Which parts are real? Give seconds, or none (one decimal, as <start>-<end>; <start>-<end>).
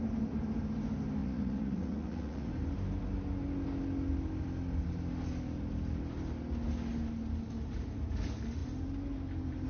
0.0-1.2; 2.5-9.7